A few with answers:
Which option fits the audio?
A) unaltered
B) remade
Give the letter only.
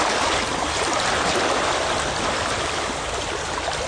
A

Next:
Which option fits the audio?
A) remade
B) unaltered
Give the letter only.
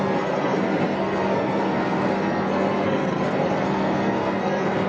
A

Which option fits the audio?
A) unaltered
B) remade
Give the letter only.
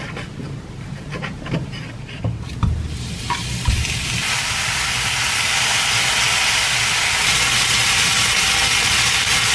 A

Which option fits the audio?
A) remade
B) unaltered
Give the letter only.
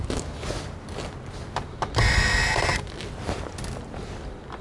B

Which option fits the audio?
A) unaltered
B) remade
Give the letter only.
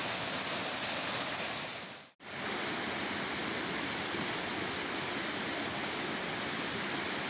A